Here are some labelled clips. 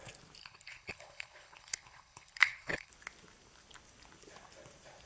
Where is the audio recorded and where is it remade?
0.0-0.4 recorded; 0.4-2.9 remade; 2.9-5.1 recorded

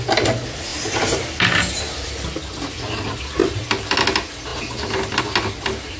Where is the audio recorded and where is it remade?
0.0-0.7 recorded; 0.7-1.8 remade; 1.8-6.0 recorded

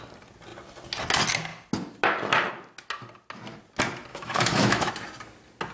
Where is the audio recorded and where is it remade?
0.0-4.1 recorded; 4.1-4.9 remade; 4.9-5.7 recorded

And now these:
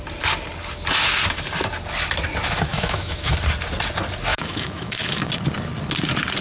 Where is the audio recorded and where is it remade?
0.0-2.7 recorded; 2.7-3.3 remade; 3.3-4.3 recorded; 4.3-5.3 remade; 5.3-6.4 recorded

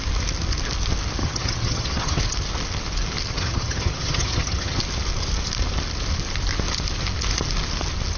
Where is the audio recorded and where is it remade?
0.0-1.2 recorded; 1.2-2.2 remade; 2.2-3.3 recorded; 3.3-4.8 remade; 4.8-8.2 recorded

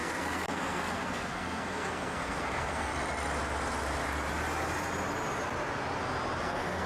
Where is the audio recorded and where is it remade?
0.0-2.9 remade; 2.9-6.4 recorded; 6.4-6.9 remade